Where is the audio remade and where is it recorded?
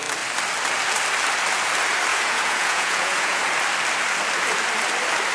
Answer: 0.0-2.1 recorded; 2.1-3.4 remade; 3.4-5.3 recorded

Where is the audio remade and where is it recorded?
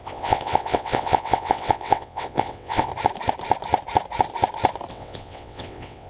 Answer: 0.0-2.9 remade; 2.9-4.9 recorded; 4.9-6.1 remade